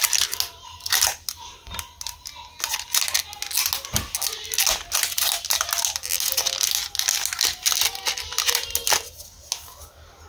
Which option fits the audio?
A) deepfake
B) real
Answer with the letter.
B